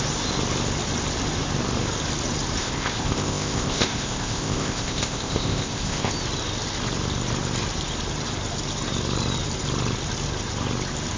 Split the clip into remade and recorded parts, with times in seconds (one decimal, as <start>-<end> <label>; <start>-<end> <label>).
0.0-2.6 recorded; 2.6-6.1 remade; 6.1-11.2 recorded